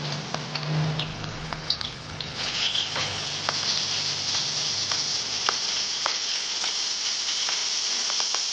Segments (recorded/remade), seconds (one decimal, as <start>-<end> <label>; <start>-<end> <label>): 0.0-1.1 recorded; 1.1-3.3 remade; 3.3-6.1 recorded; 6.1-6.7 remade; 6.7-8.5 recorded